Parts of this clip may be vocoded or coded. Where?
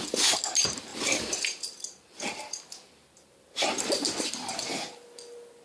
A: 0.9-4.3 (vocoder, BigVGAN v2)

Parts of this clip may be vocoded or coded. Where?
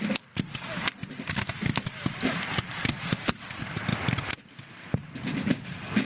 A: none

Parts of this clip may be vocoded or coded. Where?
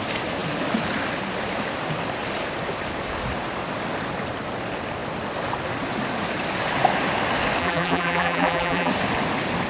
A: 7.6-8.9 (vocoder, BigVGAN v2)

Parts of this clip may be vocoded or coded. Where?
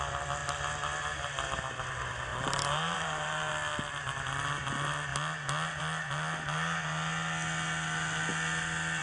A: 2.3-3.5 (vocoder, BigVGAN v2)